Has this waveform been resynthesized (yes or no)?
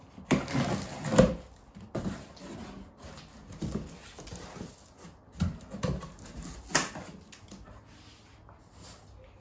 no